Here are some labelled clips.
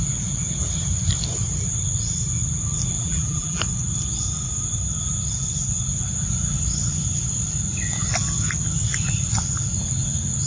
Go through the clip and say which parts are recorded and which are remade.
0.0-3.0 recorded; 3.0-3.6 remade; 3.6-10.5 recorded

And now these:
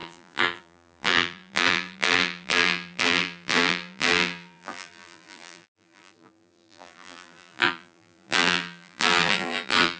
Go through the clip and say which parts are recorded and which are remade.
0.0-10.0 remade

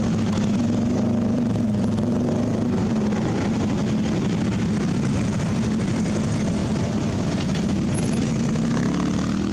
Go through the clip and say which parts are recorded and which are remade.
0.0-6.6 recorded; 6.6-8.5 remade; 8.5-9.5 recorded

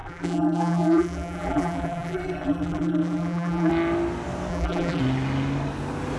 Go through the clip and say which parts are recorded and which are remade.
0.0-3.7 remade; 3.7-4.5 recorded; 4.5-5.0 remade; 5.0-6.2 recorded